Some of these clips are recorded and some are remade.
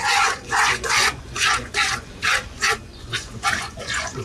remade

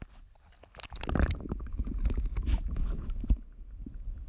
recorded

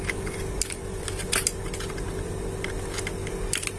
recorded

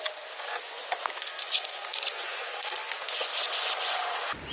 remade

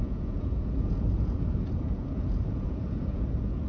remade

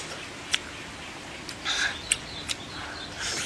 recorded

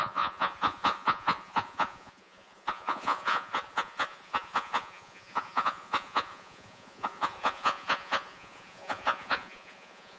remade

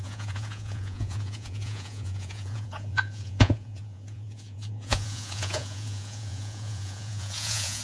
remade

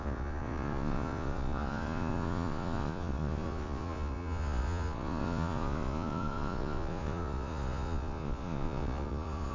remade